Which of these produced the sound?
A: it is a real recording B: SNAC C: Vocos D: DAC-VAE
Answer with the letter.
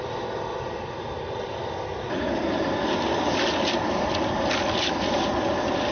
A